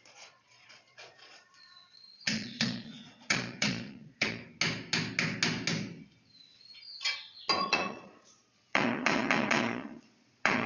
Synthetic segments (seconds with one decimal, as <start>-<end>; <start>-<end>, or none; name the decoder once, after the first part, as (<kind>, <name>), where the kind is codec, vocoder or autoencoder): 0.0-4.4 (vocoder, Vocos); 7.6-10.7